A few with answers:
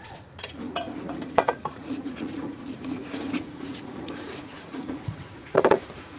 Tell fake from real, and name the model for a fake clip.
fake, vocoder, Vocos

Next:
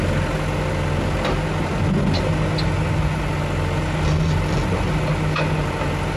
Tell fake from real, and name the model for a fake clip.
real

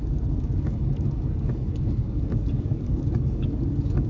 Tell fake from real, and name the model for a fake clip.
fake, codec, DAC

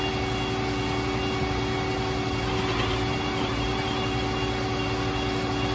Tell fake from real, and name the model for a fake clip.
real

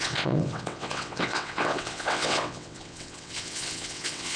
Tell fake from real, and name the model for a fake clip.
fake, vocoder, WaveNeXt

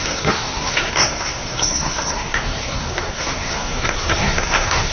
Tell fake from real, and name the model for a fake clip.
fake, codec, SNAC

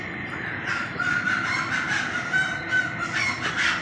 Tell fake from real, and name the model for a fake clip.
real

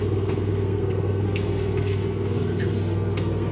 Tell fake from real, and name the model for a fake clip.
fake, codec, SNAC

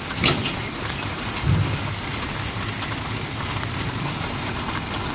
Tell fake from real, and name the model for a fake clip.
real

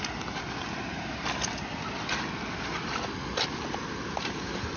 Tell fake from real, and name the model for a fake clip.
real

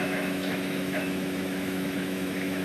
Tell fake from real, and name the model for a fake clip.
fake, autoencoder, DAC-VAE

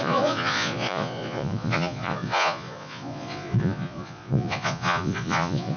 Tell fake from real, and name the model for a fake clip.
fake, vocoder, Vocos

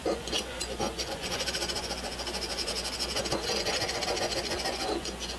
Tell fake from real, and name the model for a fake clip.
fake, vocoder, Vocos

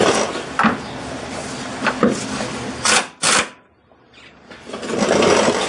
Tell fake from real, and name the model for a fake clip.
real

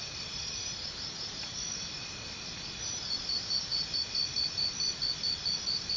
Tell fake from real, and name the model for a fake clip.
real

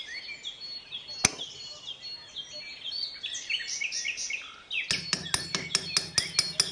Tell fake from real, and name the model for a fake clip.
real